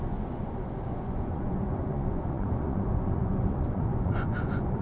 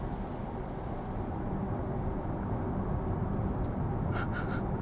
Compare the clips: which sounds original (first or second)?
second